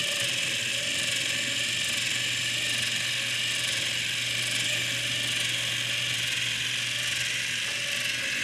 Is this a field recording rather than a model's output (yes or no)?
yes